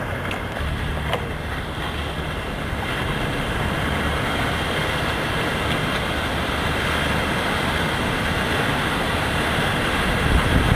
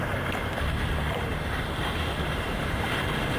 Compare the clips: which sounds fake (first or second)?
second